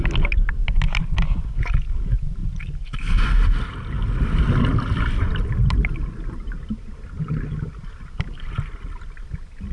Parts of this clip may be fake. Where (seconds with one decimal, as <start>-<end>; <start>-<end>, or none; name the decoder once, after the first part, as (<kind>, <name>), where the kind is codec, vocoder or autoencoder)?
none